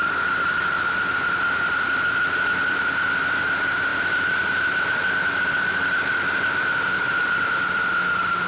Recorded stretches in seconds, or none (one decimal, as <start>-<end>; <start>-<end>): 0.0-3.9; 7.4-8.5